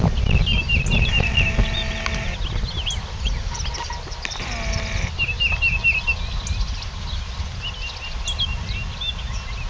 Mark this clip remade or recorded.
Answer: recorded